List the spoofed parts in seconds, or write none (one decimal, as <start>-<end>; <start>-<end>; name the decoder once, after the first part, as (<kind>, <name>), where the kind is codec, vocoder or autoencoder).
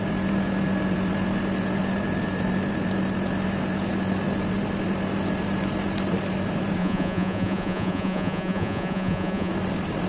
6.8-9.5 (vocoder, Vocos)